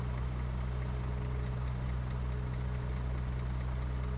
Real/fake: real